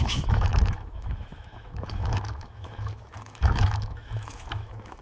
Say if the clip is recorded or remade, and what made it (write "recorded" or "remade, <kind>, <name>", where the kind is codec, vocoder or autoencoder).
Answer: remade, autoencoder, DAC-VAE